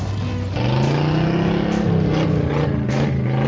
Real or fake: real